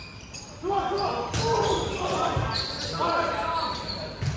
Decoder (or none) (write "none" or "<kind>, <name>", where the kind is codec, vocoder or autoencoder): vocoder, BigVGAN v2